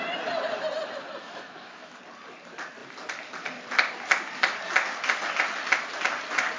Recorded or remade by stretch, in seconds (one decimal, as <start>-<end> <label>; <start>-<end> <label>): 0.0-1.2 recorded; 1.2-2.0 remade; 2.0-6.6 recorded